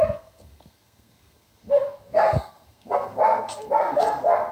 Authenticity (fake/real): fake